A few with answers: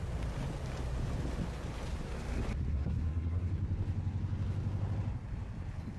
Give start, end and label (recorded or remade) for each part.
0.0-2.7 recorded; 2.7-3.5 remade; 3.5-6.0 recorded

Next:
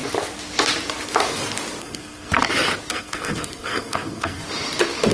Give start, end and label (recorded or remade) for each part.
0.0-1.8 recorded; 1.8-2.3 remade; 2.3-2.9 recorded; 2.9-4.4 remade; 4.4-5.1 recorded

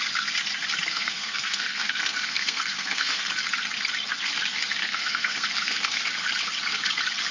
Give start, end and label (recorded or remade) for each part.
0.0-0.9 recorded; 0.9-3.3 remade; 3.3-4.8 recorded; 4.8-6.0 remade; 6.0-7.3 recorded

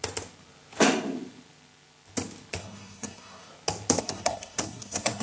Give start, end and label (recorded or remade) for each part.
0.0-2.6 recorded; 2.6-3.5 remade; 3.5-4.0 recorded; 4.0-5.2 remade

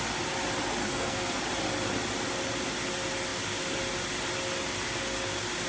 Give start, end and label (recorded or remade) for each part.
0.0-0.8 recorded; 0.8-1.4 remade; 1.4-5.7 recorded

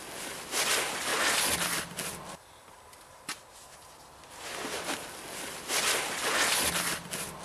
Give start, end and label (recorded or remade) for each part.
0.0-7.4 recorded

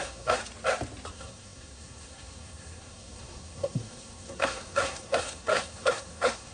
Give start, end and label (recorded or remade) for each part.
0.0-0.4 remade; 0.4-1.1 recorded; 1.1-6.5 remade